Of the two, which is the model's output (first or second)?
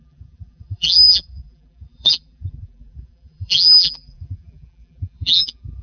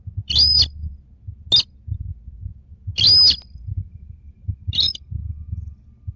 first